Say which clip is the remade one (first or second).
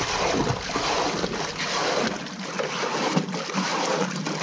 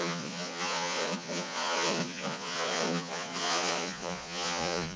second